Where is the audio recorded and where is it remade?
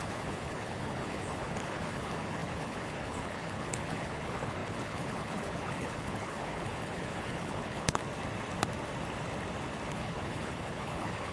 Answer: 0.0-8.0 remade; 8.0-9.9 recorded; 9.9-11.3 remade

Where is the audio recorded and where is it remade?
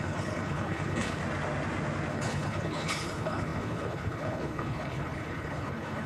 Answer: 0.0-1.2 remade; 1.2-2.1 recorded; 2.1-6.1 remade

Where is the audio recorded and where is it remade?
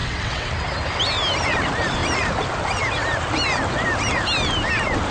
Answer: 0.0-0.5 remade; 0.5-5.1 recorded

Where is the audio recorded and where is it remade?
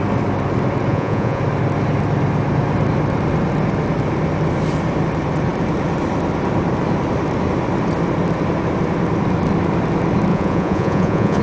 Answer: 0.0-0.9 recorded; 0.9-1.4 remade; 1.4-10.3 recorded; 10.3-11.4 remade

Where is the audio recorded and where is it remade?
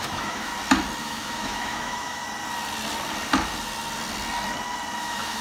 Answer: 0.0-0.5 remade; 0.5-1.0 recorded; 1.0-2.2 remade; 2.2-5.0 recorded; 5.0-5.4 remade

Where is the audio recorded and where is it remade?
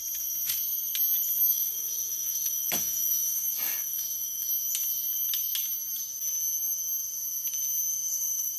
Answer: 0.0-1.5 recorded; 1.5-4.5 remade; 4.5-7.9 recorded; 7.9-8.6 remade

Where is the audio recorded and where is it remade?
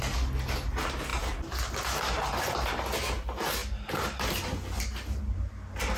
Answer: 0.0-6.0 recorded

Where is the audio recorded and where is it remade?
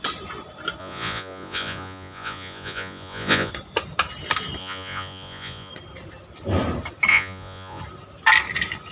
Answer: 0.0-0.8 recorded; 0.8-3.5 remade; 3.5-4.6 recorded; 4.6-5.7 remade; 5.7-7.1 recorded; 7.1-7.8 remade; 7.8-8.9 recorded